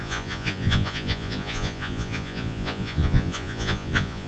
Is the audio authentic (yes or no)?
no